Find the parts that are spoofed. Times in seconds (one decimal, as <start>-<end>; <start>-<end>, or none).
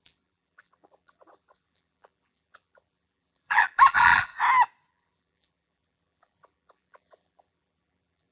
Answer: 0.0-4.3; 4.9-8.3